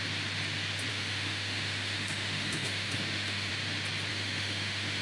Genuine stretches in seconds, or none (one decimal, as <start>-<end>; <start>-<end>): 0.0-0.9; 3.5-4.1